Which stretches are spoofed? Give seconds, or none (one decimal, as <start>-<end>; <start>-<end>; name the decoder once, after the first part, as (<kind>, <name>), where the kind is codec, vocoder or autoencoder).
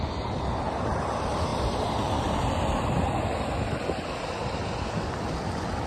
1.5-2.8 (vocoder, BigVGAN v2)